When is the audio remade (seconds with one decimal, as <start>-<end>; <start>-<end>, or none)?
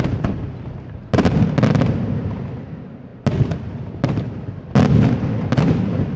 none